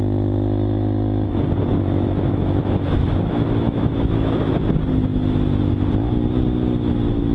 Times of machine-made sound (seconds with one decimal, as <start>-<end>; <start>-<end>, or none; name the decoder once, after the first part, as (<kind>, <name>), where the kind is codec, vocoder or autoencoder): 1.7-4.5 (autoencoder, DAC-VAE)